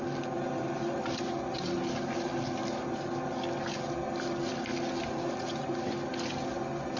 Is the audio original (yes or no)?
yes